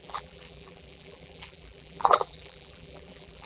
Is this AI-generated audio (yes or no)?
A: yes